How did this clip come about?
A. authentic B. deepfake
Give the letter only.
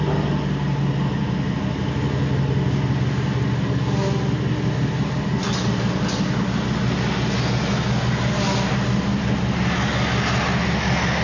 A